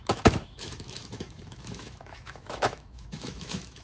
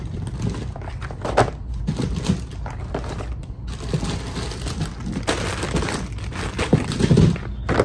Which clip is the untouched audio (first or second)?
second